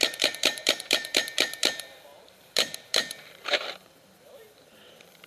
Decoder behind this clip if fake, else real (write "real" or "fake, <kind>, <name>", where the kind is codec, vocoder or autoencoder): fake, vocoder, BigVGAN v2